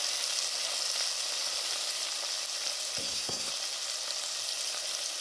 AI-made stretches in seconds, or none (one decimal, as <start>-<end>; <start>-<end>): 3.0-3.5